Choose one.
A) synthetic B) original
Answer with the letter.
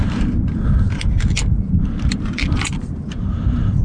A